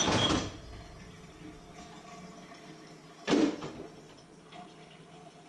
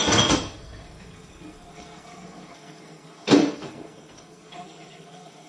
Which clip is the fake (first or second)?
second